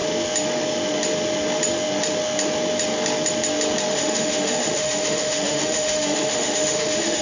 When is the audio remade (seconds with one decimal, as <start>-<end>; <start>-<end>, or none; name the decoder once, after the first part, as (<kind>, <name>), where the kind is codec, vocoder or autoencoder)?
3.9-7.2 (autoencoder, DAC-VAE)